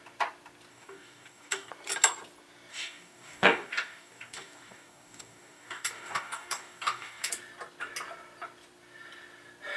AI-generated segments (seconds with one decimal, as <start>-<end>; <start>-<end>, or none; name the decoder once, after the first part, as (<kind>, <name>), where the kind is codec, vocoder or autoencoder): 0.7-1.7 (codec, DAC); 2.7-7.3